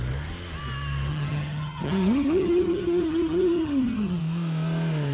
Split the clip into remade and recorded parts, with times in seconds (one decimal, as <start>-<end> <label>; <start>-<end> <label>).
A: 0.0-1.1 recorded; 1.1-4.2 remade; 4.2-5.1 recorded